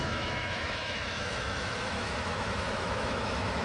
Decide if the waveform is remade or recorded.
remade